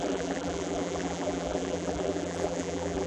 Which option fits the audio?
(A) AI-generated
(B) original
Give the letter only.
A